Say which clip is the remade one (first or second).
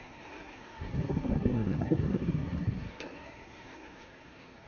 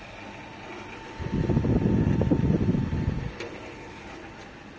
first